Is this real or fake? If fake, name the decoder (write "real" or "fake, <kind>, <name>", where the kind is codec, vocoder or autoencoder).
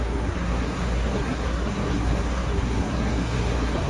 fake, codec, SNAC